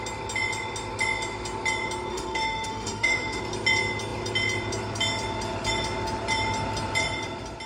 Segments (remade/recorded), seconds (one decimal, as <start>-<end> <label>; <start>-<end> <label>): 0.0-2.1 recorded; 2.1-3.4 remade; 3.4-7.7 recorded